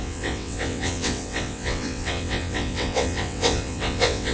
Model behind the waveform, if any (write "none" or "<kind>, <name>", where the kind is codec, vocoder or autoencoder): vocoder, WaveNeXt